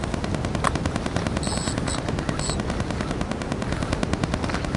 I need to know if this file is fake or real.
real